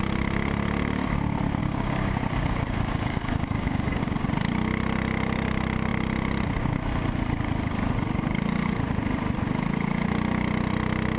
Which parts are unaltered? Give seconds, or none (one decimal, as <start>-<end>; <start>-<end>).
0.0-1.6; 4.0-11.2